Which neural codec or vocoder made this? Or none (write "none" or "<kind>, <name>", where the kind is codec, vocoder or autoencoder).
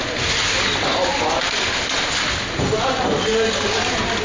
none